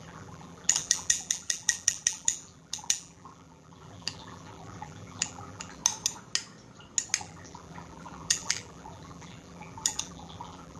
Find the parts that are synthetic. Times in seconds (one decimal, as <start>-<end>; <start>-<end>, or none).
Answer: 0.0-5.8; 7.2-10.8